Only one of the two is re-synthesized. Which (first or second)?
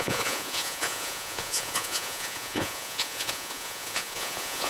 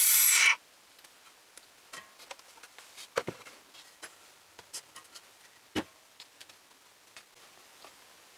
first